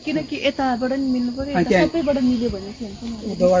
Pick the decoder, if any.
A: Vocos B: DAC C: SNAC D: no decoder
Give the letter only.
D